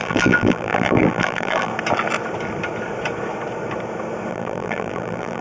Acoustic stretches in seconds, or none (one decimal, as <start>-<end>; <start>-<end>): 1.7-4.3